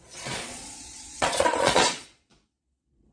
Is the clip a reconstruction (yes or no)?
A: yes